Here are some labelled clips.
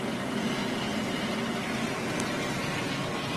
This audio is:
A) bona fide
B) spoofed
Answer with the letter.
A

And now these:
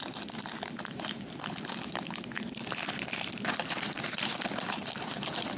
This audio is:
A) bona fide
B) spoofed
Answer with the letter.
B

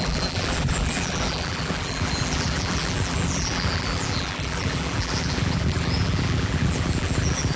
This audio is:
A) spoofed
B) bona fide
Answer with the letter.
A